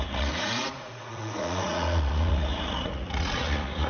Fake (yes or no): yes